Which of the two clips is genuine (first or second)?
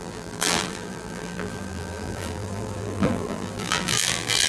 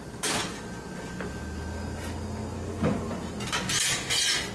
second